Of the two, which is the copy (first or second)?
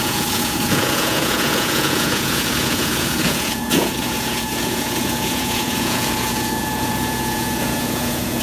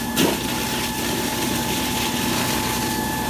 first